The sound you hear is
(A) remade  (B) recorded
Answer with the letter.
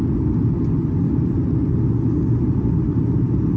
B